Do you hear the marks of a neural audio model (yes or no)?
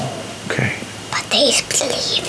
no